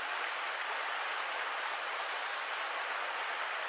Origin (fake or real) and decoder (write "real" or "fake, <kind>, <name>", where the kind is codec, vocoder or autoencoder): real